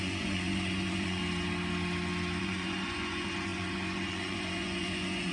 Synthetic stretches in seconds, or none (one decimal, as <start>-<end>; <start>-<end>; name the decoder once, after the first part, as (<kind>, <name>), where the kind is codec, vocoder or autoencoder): 0.0-1.2 (vocoder, Vocos); 2.4-5.3